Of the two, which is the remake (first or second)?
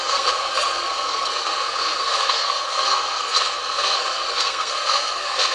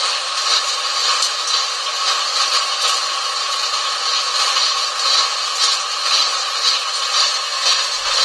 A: first